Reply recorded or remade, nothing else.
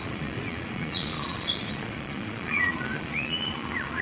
remade